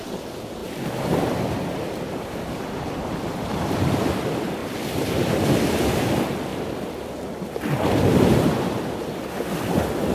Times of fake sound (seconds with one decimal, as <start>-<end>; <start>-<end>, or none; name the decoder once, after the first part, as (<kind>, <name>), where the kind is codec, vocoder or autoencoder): 0.6-4.1 (vocoder, BigVGAN v2); 4.6-5.3